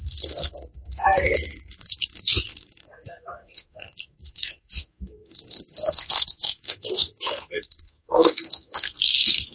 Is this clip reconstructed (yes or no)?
yes